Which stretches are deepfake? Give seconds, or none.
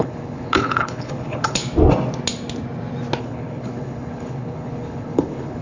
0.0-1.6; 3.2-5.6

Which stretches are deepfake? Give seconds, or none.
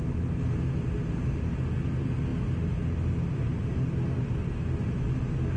none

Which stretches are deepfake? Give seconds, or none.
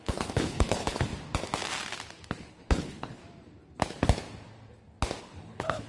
0.0-1.1; 2.5-3.2; 5.2-5.9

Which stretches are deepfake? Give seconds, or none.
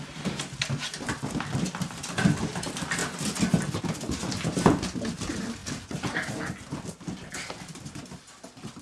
none